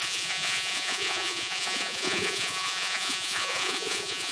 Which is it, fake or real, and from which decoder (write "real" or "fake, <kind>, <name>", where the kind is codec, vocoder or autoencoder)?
fake, vocoder, Vocos